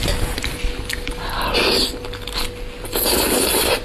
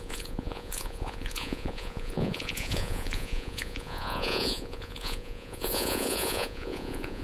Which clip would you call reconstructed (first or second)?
second